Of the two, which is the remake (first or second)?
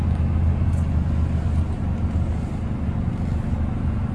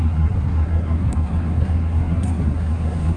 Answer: second